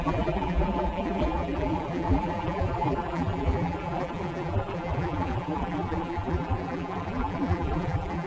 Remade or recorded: remade